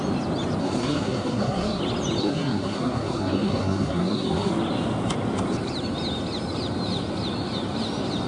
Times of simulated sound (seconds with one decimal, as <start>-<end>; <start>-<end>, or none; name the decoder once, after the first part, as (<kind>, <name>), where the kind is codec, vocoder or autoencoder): 0.6-1.8 (codec, SNAC); 2.2-4.5